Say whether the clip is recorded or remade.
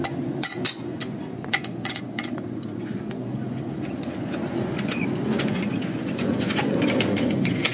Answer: remade